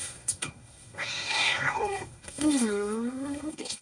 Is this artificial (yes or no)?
yes